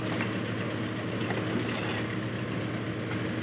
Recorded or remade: recorded